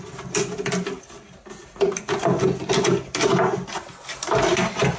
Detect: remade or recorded recorded